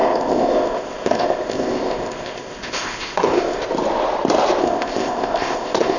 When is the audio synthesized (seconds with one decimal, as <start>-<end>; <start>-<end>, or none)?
0.0-3.6; 4.6-6.0